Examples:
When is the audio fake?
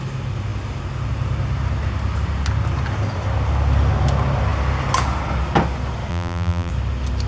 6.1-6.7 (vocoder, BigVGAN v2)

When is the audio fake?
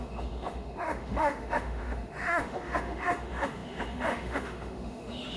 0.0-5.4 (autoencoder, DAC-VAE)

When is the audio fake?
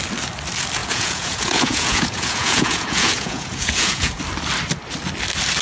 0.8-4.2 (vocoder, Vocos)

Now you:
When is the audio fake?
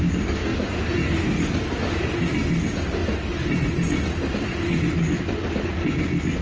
none